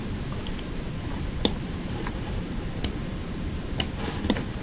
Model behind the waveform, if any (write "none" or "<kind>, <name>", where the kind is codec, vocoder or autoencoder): none